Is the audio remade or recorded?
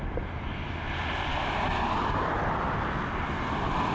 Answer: recorded